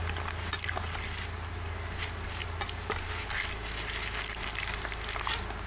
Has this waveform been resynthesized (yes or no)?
no